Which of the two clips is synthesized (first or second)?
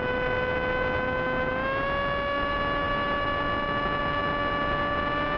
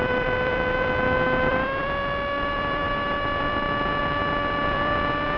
second